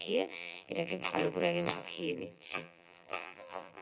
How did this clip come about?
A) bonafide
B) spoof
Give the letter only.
B